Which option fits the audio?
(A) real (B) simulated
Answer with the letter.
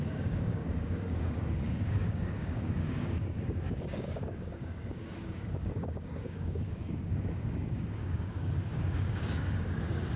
B